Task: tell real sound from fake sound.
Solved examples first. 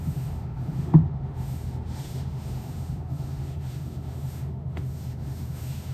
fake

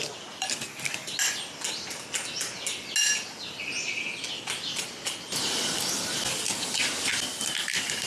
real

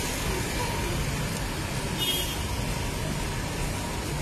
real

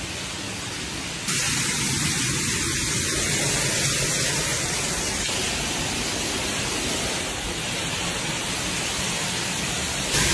real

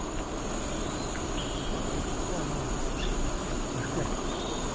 real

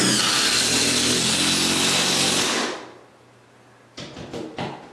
real